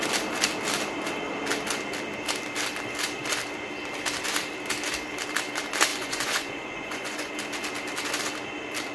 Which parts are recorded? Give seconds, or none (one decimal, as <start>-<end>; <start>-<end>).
0.0-5.9; 7.3-8.9